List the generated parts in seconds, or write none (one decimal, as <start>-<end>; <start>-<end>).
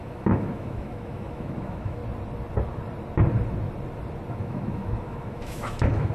0.0-2.0; 4.3-6.1